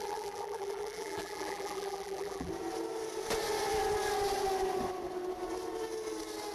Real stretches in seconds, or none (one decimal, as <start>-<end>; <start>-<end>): 2.5-6.5